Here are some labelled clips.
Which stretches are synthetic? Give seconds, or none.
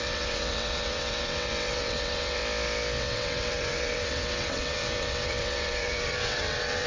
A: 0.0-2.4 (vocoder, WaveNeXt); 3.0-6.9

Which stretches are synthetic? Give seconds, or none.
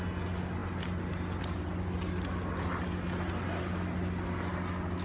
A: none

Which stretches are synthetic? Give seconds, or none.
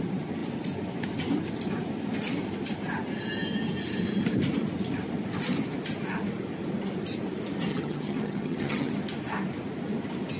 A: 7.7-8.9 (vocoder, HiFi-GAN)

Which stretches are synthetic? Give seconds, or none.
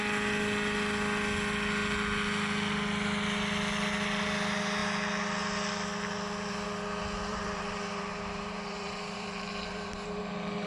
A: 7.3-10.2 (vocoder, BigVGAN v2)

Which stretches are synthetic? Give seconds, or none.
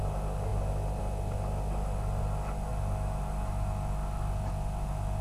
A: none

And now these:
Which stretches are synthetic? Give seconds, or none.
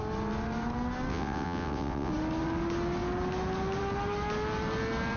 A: 1.1-2.1 (vocoder, WaveNeXt)